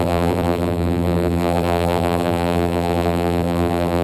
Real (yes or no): no